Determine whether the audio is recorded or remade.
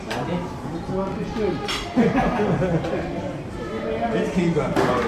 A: recorded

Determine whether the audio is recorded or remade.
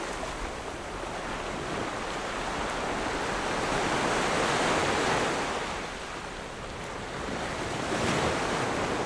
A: recorded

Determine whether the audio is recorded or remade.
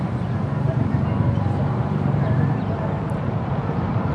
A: remade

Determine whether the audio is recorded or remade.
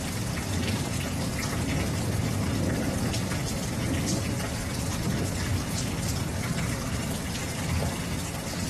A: recorded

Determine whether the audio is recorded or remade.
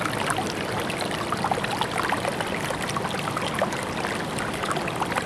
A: recorded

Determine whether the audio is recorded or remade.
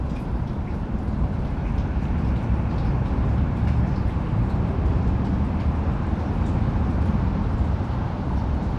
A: remade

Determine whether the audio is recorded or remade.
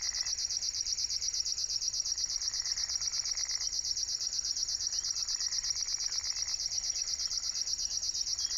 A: recorded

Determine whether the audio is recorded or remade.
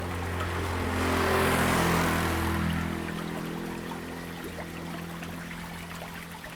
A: recorded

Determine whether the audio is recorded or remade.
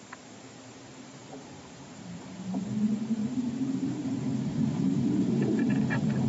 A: remade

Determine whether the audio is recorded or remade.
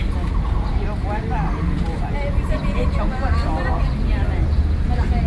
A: recorded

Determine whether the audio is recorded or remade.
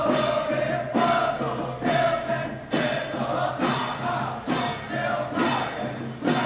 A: recorded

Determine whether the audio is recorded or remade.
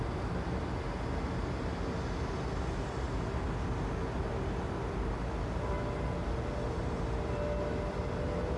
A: recorded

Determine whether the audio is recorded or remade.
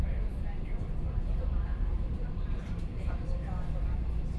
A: remade